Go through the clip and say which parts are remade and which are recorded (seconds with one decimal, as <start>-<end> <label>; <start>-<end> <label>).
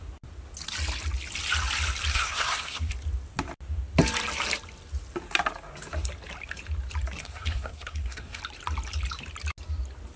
0.0-2.1 recorded; 2.1-2.9 remade; 2.9-7.2 recorded; 7.2-8.4 remade; 8.4-10.2 recorded